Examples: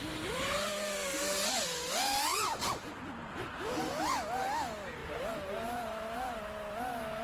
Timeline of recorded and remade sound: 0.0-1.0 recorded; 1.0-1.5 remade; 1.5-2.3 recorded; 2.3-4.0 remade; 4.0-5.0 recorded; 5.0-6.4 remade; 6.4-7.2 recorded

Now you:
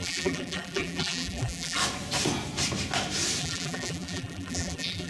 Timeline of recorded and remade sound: 0.0-1.8 remade; 1.8-3.4 recorded; 3.4-5.1 remade

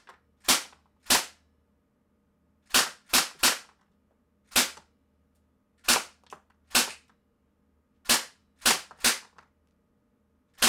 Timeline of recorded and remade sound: 0.0-10.7 recorded

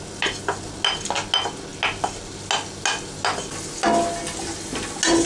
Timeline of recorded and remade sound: 0.0-5.3 recorded